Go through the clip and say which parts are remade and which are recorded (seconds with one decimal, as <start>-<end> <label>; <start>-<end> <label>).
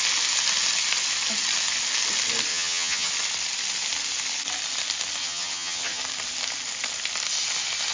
0.0-2.5 recorded; 2.5-3.1 remade; 3.1-5.2 recorded; 5.2-6.0 remade; 6.0-7.9 recorded